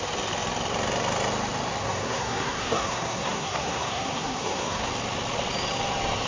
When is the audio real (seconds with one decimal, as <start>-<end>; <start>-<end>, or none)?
0.0-1.8; 4.9-6.3